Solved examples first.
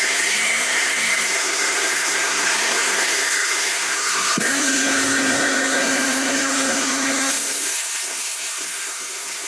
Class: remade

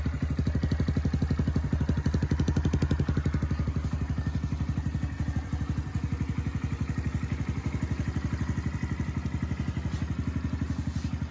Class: recorded